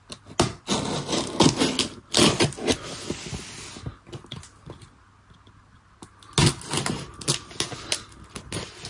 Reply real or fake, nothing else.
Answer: real